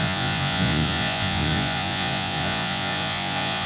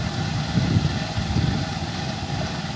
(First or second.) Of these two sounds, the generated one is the first